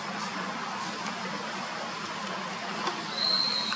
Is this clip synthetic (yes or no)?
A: no